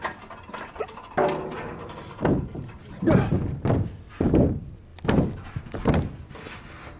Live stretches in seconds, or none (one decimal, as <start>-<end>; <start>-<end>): 0.0-7.0